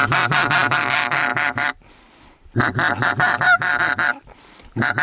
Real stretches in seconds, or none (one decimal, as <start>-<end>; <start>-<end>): 0.0-5.0